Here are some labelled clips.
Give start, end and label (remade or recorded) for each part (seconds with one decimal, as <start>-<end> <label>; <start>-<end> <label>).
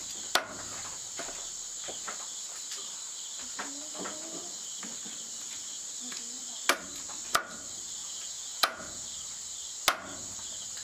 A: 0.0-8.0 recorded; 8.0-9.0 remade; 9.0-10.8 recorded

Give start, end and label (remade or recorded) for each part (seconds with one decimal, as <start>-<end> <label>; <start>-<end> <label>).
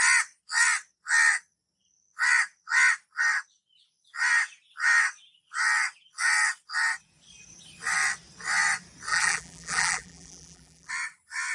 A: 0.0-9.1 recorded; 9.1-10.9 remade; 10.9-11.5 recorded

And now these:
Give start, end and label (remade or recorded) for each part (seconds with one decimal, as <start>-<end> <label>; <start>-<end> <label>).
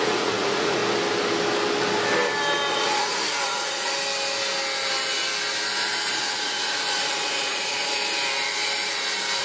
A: 0.0-0.8 remade; 0.8-2.7 recorded; 2.7-3.9 remade; 3.9-6.1 recorded; 6.1-8.0 remade; 8.0-9.4 recorded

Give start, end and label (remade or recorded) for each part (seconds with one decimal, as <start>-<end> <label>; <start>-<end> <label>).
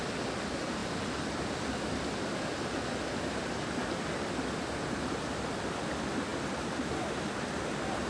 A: 0.0-8.1 recorded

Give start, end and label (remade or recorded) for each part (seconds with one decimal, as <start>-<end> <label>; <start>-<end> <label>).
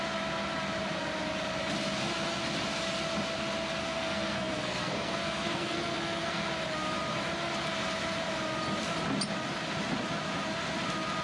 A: 0.0-3.8 recorded; 3.8-6.5 remade; 6.5-11.2 recorded